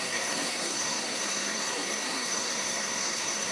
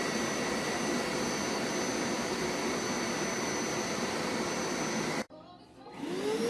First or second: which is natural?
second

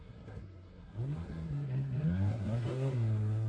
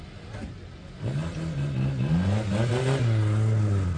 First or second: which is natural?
second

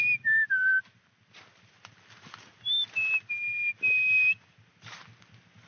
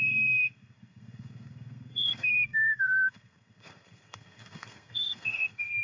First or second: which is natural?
first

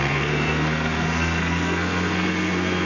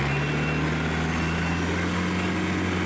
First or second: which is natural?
second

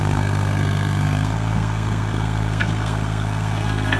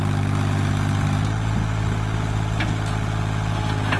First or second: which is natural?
second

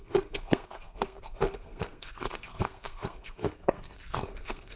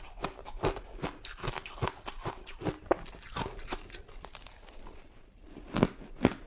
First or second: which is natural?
second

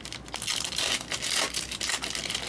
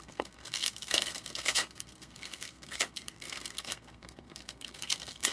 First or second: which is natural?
first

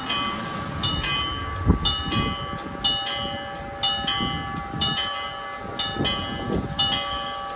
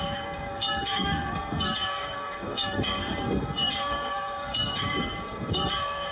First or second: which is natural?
first